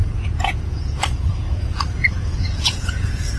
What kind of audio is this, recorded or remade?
remade